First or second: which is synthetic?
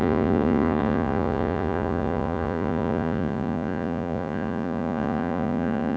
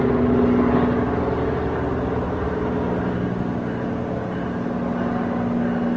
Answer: first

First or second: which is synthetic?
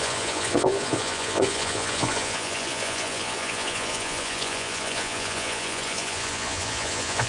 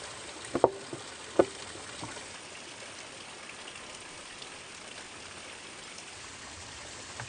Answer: first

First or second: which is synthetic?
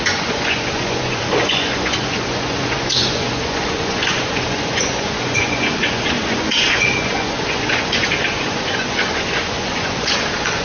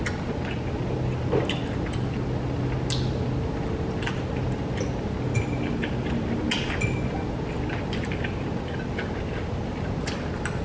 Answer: first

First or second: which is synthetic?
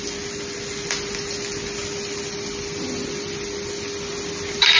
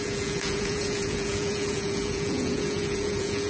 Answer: second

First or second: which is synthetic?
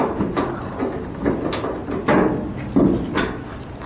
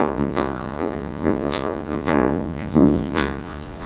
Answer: second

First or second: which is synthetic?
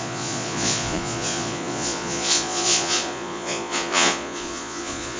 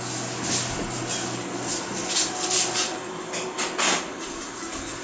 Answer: first